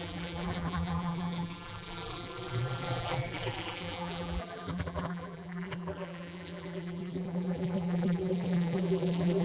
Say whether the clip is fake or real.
fake